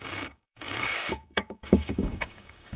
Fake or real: fake